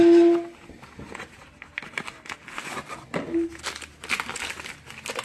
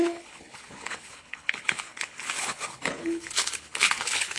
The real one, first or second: first